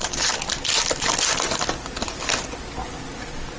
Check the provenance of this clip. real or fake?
real